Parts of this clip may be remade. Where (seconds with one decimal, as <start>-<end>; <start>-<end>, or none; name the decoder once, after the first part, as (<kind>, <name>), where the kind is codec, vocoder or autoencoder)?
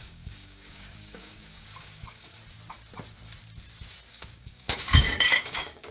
0.0-2.4 (codec, DAC); 4.1-5.9